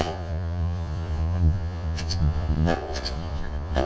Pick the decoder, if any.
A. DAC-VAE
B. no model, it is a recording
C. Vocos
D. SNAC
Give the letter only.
C